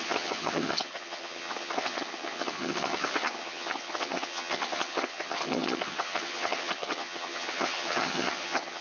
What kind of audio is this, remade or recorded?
remade